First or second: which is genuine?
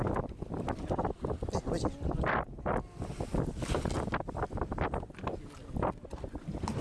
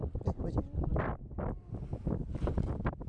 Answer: first